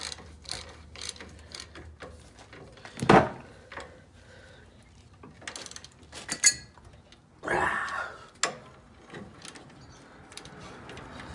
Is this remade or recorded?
recorded